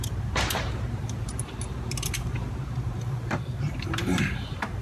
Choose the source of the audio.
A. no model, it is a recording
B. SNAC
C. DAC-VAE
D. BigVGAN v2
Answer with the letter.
D